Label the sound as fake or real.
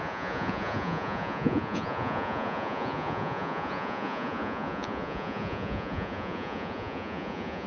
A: fake